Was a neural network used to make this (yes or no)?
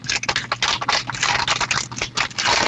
no